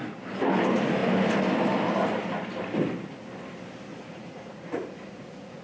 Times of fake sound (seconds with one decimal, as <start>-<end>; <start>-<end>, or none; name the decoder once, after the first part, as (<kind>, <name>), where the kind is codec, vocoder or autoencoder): 3.9-5.6 (vocoder, Vocos)